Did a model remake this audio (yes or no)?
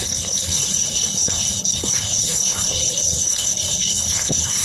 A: yes